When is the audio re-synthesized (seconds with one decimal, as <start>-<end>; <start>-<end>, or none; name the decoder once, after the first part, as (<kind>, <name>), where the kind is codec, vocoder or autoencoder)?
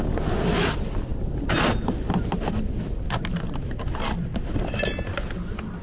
none